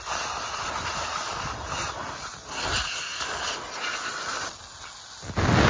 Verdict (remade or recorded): recorded